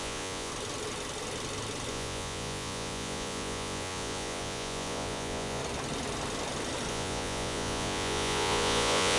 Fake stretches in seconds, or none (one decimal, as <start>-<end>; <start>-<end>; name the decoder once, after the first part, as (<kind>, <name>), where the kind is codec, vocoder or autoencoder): 0.0-0.5 (vocoder, Vocos); 1.9-5.6; 6.9-9.2